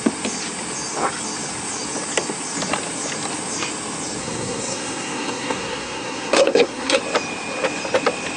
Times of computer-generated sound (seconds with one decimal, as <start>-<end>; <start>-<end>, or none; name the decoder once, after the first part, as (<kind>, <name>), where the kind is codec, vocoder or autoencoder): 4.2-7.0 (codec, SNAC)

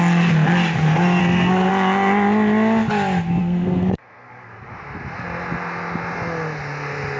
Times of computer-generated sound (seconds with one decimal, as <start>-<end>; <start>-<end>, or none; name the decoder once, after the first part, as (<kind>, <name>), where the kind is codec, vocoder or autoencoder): 1.2-1.7 (codec, SNAC); 3.4-4.5

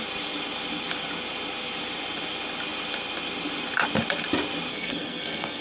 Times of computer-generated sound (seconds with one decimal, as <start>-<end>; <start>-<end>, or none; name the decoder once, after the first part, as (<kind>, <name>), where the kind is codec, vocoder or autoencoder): 4.7-5.6 (codec, SNAC)

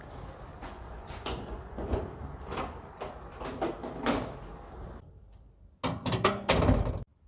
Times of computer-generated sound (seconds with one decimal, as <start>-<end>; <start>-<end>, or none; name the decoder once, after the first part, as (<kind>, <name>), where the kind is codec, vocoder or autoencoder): 0.5-2.0 (vocoder, Vocos)